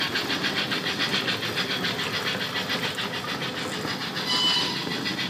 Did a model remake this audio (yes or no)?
no